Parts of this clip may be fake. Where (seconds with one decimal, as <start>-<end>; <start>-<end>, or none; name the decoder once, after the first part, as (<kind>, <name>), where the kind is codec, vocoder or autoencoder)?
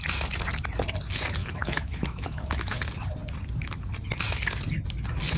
1.4-2.8 (autoencoder, DAC-VAE)